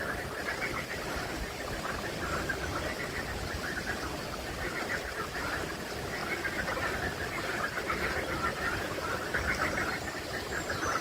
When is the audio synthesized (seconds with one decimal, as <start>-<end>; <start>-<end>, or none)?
none